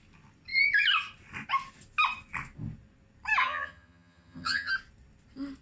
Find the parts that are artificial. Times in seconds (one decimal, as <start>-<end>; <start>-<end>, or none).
3.4-4.7